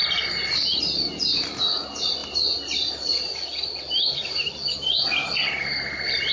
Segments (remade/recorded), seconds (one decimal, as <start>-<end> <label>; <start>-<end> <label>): 0.0-6.3 recorded